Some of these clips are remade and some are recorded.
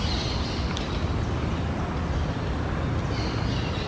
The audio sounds recorded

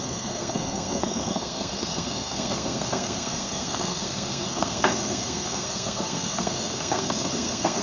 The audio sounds remade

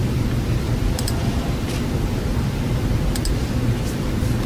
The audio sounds recorded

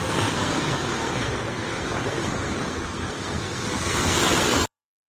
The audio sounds remade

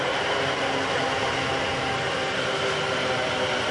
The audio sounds recorded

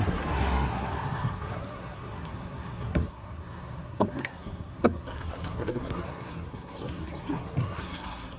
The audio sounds remade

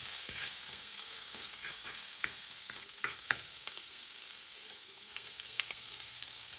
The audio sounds remade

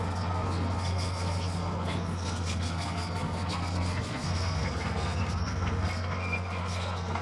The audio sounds remade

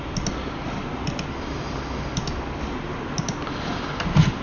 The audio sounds recorded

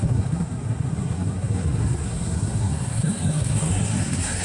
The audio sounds remade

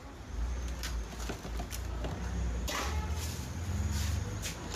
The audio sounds recorded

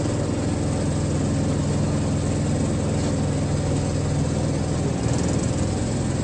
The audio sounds recorded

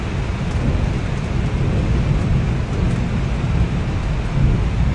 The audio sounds recorded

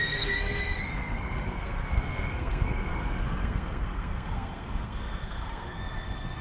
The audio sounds remade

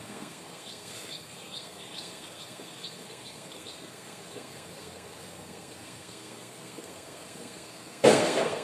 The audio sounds remade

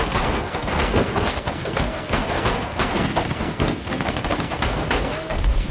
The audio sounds remade